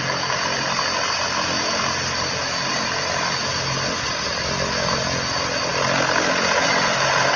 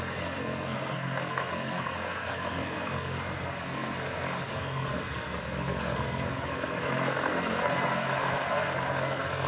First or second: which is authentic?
first